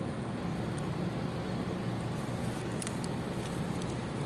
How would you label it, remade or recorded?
recorded